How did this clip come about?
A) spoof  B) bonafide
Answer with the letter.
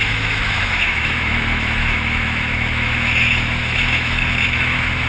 A